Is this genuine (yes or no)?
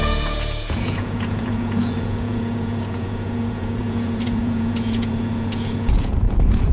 no